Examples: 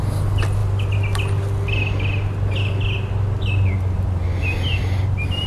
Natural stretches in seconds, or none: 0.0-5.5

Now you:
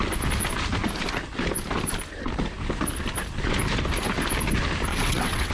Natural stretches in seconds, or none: 0.0-4.9